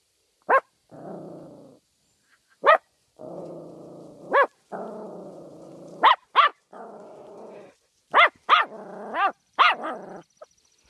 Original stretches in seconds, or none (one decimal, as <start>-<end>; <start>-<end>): 0.0-2.3; 3.7-5.0; 5.7-6.5; 8.0-10.9